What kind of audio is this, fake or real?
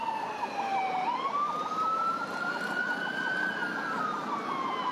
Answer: real